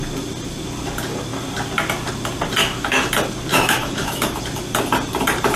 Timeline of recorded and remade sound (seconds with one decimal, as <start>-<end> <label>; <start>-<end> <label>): 0.0-2.6 recorded; 2.6-3.1 remade; 3.1-3.5 recorded; 3.5-4.4 remade; 4.4-5.6 recorded